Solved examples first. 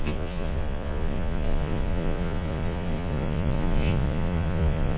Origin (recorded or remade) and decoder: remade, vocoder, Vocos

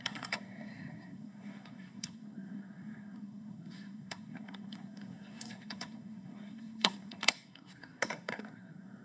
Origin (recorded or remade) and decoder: remade, codec, SNAC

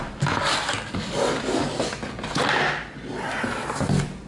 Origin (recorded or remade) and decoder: recorded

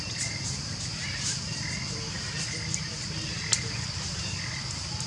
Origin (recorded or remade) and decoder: recorded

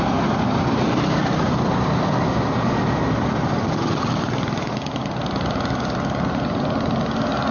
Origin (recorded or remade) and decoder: recorded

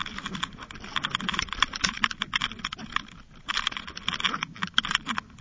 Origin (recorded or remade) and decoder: recorded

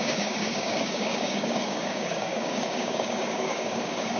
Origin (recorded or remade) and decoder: remade, codec, DAC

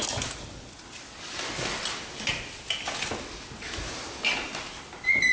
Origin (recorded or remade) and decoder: recorded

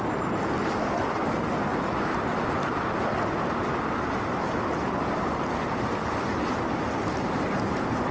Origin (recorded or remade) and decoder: recorded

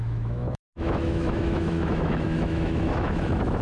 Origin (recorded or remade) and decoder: remade, autoencoder, DAC-VAE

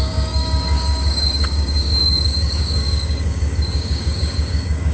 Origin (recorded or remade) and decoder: remade, codec, DAC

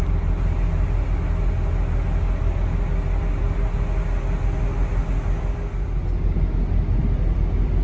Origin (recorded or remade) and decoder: recorded